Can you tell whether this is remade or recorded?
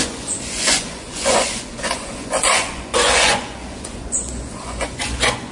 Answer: remade